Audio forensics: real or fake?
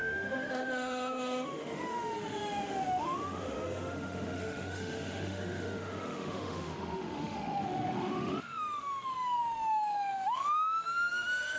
fake